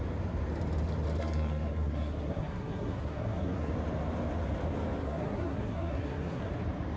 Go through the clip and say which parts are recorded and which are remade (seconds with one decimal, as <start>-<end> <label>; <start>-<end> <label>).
0.0-1.2 recorded; 1.2-3.7 remade; 3.7-5.0 recorded; 5.0-6.5 remade; 6.5-7.0 recorded